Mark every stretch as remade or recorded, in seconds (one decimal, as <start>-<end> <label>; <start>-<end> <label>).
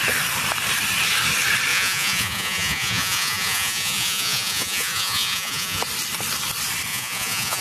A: 0.0-1.7 recorded; 1.7-5.8 remade; 5.8-6.9 recorded; 6.9-7.6 remade